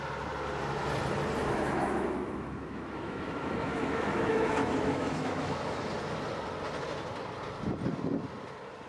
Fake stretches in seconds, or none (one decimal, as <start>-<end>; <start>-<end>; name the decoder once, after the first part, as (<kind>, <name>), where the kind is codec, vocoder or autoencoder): 1.4-5.6 (autoencoder, DAC-VAE)